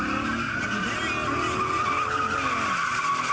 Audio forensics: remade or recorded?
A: recorded